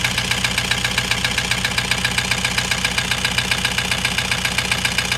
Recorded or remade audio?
recorded